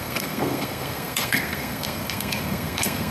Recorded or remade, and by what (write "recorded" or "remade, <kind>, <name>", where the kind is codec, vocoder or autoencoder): remade, codec, SNAC